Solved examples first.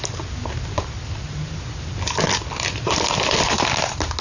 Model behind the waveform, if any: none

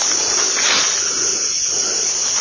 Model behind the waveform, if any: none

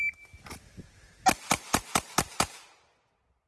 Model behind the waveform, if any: none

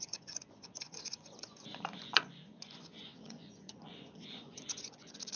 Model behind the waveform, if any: vocoder, Vocos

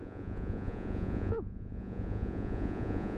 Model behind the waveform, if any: vocoder, Vocos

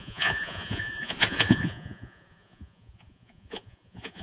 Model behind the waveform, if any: vocoder, Vocos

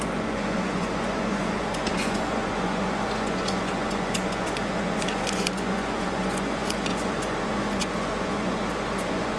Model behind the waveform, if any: vocoder, Vocos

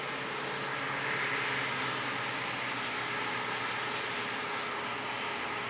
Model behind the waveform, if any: none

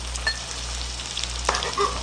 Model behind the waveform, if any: none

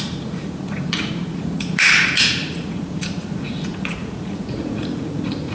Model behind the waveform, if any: vocoder, Vocos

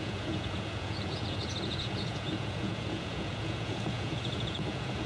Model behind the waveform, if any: vocoder, Vocos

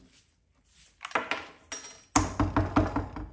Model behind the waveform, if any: none